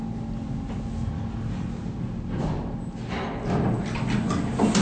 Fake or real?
real